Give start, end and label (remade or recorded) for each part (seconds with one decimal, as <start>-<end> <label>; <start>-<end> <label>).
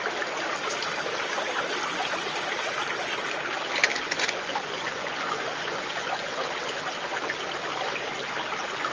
0.0-3.9 recorded; 3.9-6.5 remade; 6.5-8.9 recorded